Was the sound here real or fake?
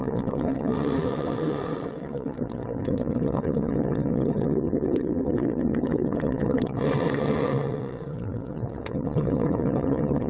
fake